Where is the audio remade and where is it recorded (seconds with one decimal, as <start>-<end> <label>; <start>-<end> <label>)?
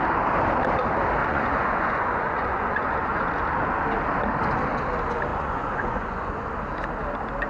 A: 0.0-1.2 recorded; 1.2-3.4 remade; 3.4-5.3 recorded; 5.3-6.5 remade; 6.5-7.5 recorded